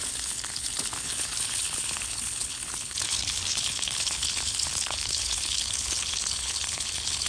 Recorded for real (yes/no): no